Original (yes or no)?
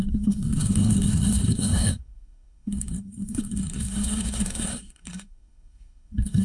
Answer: no